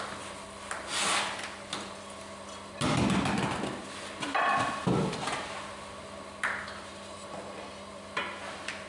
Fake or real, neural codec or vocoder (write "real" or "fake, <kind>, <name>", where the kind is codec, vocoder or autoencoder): real